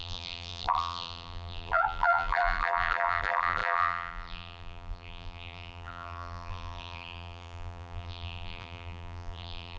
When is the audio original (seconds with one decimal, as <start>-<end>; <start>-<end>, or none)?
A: none